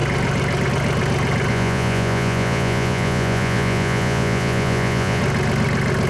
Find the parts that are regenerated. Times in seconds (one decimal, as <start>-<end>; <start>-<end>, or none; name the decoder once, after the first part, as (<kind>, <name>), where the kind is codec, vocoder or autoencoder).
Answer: 1.5-5.2 (vocoder, Vocos)